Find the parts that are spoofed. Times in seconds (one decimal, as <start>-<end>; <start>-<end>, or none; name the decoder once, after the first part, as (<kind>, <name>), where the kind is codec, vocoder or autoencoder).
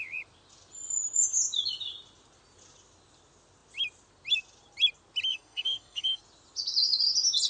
5.3-6.2 (codec, SNAC)